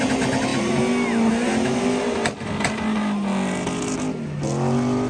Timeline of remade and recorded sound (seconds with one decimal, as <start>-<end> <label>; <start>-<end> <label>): 0.0-5.1 recorded